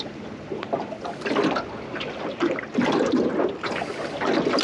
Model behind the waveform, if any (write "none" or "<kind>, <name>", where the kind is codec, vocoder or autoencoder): none